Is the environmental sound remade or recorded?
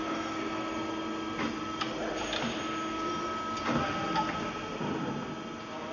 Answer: recorded